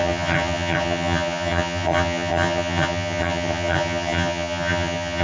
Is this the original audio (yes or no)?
no